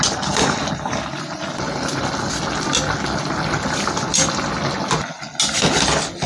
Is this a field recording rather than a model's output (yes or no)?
yes